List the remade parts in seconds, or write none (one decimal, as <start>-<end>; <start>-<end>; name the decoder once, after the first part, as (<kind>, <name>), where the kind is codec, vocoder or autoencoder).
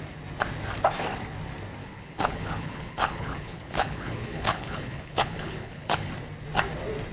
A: 1.8-6.1 (codec, HILCodec)